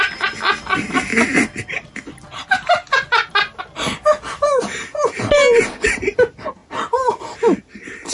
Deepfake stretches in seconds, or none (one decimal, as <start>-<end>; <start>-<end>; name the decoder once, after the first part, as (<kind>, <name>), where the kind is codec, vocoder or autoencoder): none